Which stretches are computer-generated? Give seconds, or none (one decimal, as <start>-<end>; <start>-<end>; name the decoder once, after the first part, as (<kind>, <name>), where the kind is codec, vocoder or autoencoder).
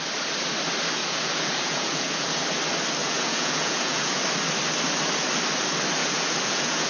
1.0-2.4 (vocoder, Vocos); 3.0-4.2; 6.0-6.9